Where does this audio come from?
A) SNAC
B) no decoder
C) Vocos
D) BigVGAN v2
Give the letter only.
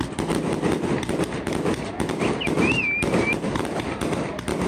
B